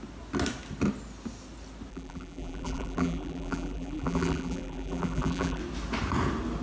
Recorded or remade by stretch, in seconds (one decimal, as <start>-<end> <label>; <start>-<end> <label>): 0.0-1.9 recorded; 1.9-5.6 remade; 5.6-6.6 recorded